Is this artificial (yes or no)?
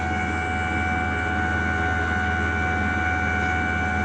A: no